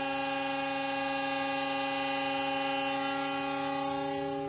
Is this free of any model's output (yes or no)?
yes